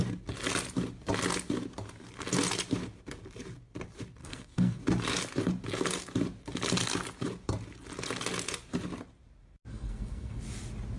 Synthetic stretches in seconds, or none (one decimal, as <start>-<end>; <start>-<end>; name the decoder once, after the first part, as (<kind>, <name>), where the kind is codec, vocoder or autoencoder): 4.2-4.8 (codec, SNAC); 9.7-10.4